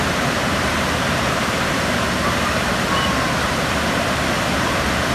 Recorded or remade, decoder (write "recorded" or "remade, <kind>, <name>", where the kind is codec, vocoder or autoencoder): remade, vocoder, BigVGAN v2